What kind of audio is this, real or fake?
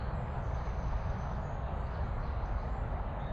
fake